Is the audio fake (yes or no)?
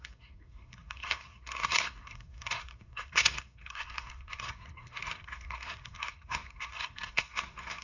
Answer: yes